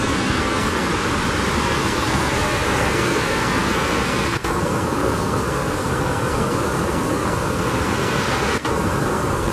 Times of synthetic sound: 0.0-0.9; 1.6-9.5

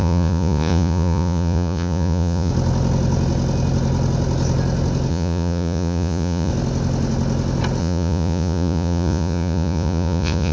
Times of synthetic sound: 0.0-2.5; 5.1-6.5; 7.8-10.5

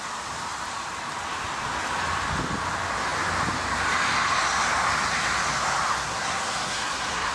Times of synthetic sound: 5.9-7.3

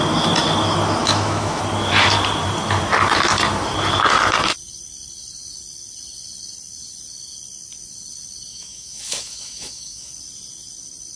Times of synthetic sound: 1.0-1.6; 8.5-10.1

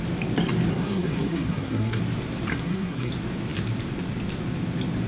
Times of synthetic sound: 0.7-2.0; 2.5-3.1